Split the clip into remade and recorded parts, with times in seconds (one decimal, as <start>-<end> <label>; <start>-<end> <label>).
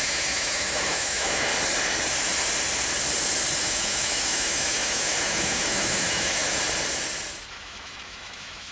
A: 0.0-1.5 remade; 1.5-3.6 recorded; 3.6-6.4 remade; 6.4-7.5 recorded; 7.5-8.7 remade